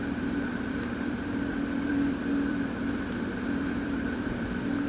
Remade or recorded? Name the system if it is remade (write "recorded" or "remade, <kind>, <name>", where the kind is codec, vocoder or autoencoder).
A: remade, vocoder, BigVGAN v2